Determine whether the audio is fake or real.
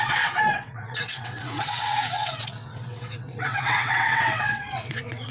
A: fake